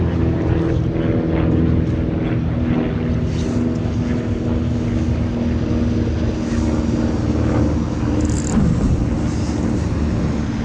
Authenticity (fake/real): real